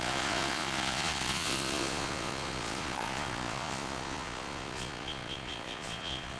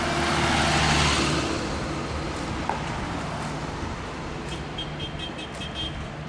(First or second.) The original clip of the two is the second